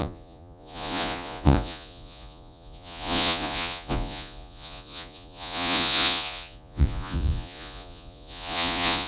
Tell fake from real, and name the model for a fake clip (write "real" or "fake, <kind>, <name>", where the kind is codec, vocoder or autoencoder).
fake, vocoder, Vocos